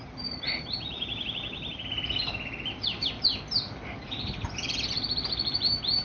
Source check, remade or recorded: recorded